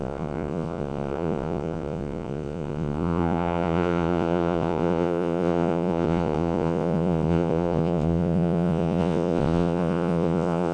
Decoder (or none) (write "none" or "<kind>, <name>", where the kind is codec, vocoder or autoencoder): vocoder, Vocos